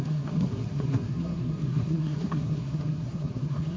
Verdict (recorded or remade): remade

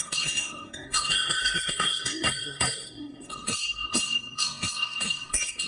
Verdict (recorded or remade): remade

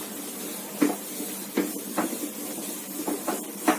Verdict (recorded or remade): recorded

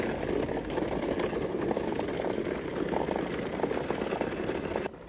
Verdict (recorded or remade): recorded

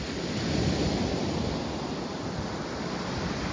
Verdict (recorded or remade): recorded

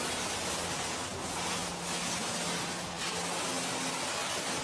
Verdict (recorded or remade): recorded